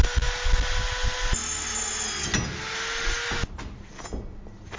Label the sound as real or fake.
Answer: real